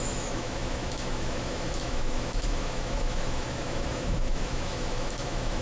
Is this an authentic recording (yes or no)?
no